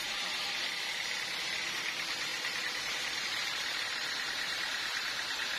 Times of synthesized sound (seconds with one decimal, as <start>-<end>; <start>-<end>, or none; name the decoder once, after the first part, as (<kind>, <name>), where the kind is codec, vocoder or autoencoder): none